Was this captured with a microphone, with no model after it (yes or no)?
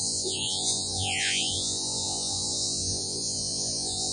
no